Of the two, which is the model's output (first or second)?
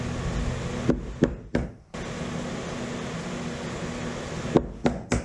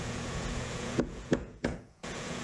second